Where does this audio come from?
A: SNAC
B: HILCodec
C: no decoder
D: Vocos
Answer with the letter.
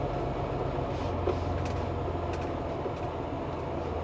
C